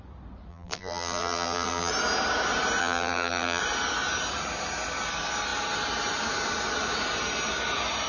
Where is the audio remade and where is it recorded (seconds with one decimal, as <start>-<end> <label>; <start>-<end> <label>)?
0.0-0.5 recorded; 0.5-1.9 remade; 1.9-2.8 recorded; 2.8-3.6 remade; 3.6-8.1 recorded